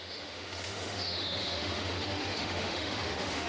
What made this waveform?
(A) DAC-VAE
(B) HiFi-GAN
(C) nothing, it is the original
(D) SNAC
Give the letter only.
A